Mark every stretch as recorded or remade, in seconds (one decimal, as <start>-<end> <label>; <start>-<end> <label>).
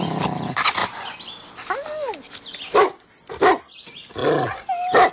0.0-5.1 recorded